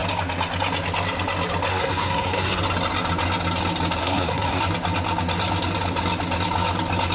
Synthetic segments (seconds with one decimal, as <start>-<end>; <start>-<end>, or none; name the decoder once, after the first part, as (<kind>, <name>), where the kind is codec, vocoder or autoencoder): 1.7-2.6 (codec, SNAC); 4.0-4.6